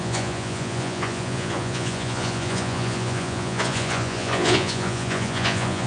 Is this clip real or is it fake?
fake